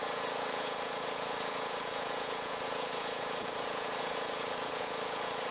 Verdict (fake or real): fake